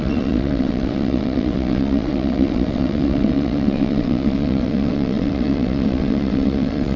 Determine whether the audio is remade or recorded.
remade